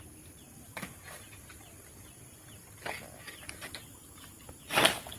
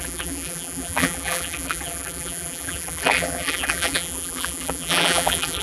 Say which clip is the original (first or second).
first